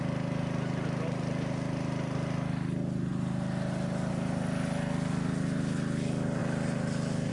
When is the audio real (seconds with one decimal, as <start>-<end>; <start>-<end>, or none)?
0.0-7.3